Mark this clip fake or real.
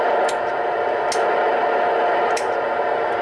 real